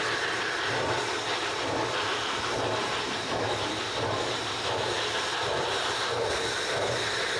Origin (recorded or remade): remade